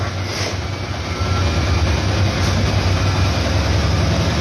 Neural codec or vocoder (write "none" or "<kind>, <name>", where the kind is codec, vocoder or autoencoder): none